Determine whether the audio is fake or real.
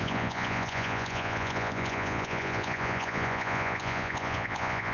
fake